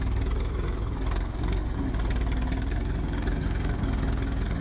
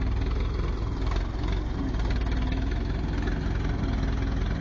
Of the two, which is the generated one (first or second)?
first